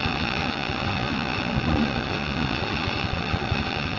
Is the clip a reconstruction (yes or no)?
yes